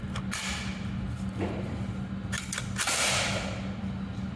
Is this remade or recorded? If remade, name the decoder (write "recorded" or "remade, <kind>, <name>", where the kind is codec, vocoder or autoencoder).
recorded